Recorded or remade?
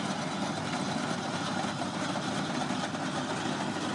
recorded